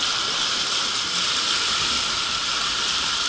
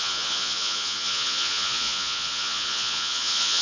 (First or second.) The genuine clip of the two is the first